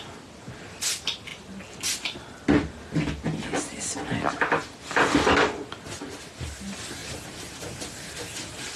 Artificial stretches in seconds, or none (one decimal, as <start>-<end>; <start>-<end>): none